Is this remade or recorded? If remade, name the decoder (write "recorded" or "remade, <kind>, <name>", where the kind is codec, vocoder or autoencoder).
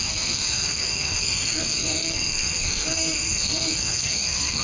remade, codec, SNAC